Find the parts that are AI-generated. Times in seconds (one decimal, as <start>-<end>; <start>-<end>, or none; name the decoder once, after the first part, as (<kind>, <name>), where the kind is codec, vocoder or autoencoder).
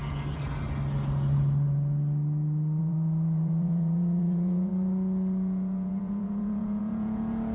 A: 2.8-7.5 (vocoder, Vocos)